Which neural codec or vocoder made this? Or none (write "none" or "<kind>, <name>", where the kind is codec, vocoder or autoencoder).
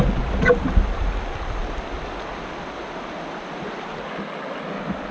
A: none